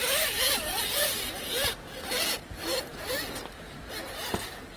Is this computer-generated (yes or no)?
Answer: no